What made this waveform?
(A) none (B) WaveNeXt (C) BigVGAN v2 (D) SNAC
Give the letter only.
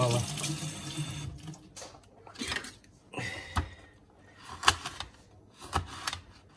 A